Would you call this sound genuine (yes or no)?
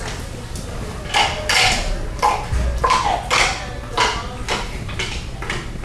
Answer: yes